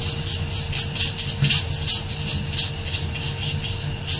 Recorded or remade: recorded